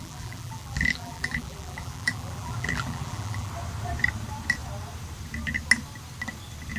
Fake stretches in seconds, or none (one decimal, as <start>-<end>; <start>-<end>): 0.0-3.5